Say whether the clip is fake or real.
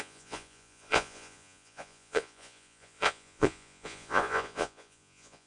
fake